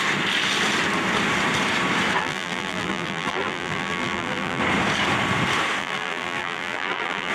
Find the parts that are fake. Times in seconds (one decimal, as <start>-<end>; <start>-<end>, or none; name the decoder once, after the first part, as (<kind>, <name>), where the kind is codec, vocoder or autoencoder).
2.2-4.6 (vocoder, BigVGAN v2); 5.8-7.3

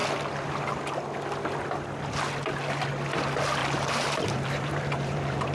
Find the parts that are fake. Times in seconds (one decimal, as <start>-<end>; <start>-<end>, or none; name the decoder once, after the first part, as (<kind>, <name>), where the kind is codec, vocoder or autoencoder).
3.6-5.5 (vocoder, BigVGAN v2)

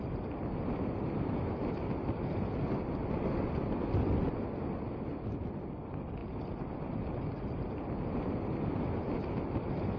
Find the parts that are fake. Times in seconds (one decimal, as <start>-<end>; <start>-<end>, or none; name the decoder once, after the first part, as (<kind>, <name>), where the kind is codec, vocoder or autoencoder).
none